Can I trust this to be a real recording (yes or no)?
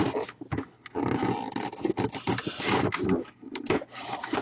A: yes